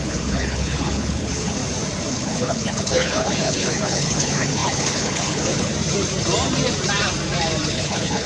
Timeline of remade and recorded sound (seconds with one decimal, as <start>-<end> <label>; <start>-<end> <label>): 0.0-1.6 remade; 1.6-2.1 recorded; 2.1-5.7 remade; 5.7-7.7 recorded; 7.7-8.3 remade